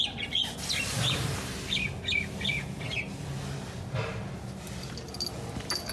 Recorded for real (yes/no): yes